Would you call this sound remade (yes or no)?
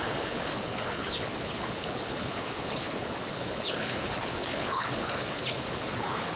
yes